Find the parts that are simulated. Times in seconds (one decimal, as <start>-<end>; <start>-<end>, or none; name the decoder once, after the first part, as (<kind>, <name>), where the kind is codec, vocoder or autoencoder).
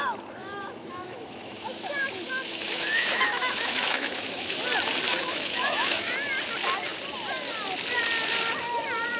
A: 0.4-4.6 (autoencoder, DAC-VAE); 5.1-6.1